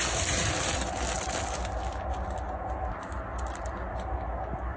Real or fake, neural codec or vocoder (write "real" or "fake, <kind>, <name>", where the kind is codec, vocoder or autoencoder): real